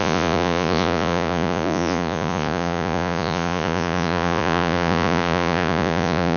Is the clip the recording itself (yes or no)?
no